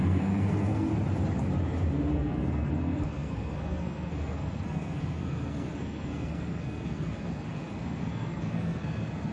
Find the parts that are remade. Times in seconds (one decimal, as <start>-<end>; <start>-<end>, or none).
0.0-0.9; 2.1-9.3